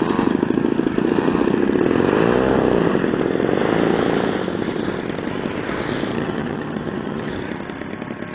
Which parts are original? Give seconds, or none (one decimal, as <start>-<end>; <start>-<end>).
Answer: 0.0-6.1; 7.3-8.3